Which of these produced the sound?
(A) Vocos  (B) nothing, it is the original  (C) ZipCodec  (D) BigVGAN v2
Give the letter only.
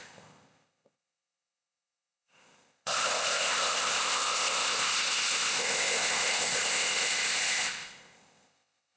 C